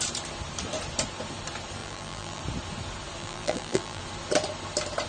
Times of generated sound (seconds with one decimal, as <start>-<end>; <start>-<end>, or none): 1.8-2.4; 3.2-4.0